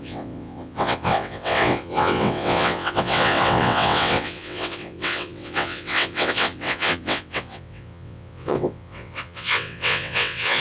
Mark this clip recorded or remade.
remade